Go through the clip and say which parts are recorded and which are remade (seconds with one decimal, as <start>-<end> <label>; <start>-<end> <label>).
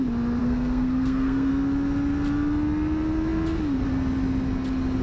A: 0.0-0.4 recorded; 0.4-1.5 remade; 1.5-5.0 recorded